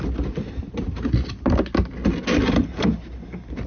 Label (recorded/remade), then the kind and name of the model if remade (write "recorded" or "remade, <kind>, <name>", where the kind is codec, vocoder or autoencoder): recorded